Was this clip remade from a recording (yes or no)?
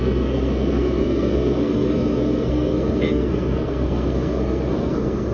yes